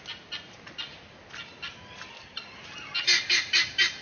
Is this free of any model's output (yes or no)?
yes